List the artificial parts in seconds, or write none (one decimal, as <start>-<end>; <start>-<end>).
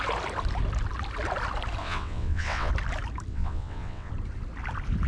1.8-2.7; 3.3-4.1